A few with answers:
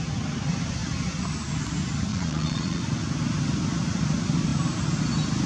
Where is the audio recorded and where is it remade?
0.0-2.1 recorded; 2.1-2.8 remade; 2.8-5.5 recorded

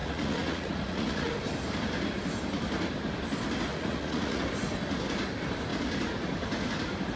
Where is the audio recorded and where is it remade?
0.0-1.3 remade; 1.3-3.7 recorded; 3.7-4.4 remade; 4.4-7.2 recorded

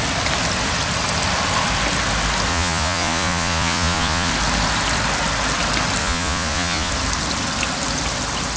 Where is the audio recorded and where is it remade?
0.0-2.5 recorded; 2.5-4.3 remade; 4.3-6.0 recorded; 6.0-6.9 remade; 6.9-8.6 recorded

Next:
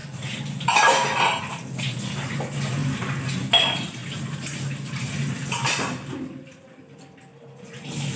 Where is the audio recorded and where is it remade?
0.0-8.2 recorded

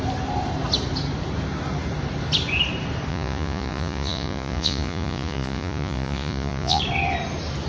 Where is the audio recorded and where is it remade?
0.0-3.1 recorded; 3.1-6.8 remade; 6.8-7.7 recorded

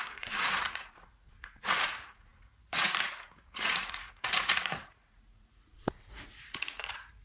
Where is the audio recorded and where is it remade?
0.0-7.2 remade